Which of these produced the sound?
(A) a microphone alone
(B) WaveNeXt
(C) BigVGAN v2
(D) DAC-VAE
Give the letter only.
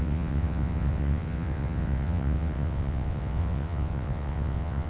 B